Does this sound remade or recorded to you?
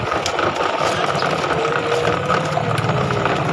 recorded